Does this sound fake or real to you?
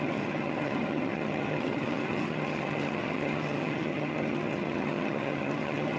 fake